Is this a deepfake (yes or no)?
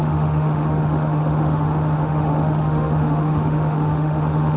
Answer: yes